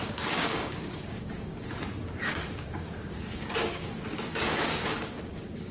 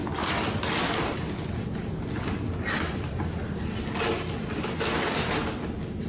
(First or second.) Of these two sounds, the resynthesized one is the first